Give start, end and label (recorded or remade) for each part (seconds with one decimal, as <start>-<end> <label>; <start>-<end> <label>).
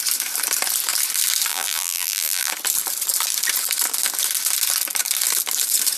0.0-1.5 recorded; 1.5-2.5 remade; 2.5-6.0 recorded